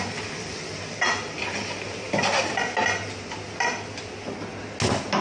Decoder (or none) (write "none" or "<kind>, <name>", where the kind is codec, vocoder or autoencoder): none